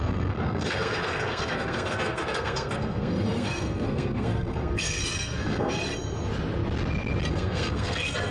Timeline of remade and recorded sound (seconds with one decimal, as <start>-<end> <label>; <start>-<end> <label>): 0.0-5.8 remade; 5.8-7.3 recorded; 7.3-8.3 remade